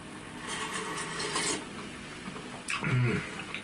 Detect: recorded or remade recorded